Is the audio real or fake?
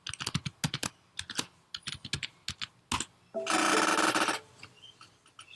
real